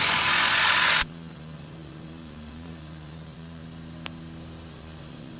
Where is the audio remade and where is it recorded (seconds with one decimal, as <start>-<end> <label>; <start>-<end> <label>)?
0.0-3.6 remade; 3.6-4.7 recorded; 4.7-5.4 remade